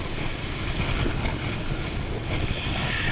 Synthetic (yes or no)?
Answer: no